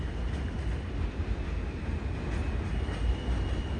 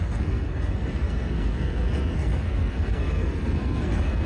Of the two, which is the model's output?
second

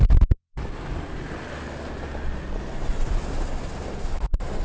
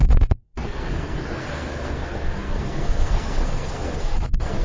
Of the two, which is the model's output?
second